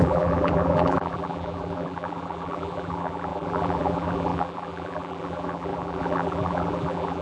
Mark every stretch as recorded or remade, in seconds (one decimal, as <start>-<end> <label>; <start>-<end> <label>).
0.0-7.2 remade